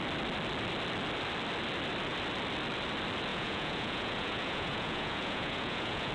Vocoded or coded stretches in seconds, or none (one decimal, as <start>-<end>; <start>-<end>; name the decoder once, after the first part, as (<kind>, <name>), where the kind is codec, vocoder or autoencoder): 3.3-6.1 (vocoder, Vocos)